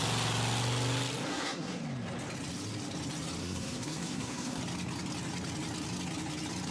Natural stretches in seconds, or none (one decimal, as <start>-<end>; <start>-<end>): 0.0-1.3; 1.8-3.4; 4.6-6.7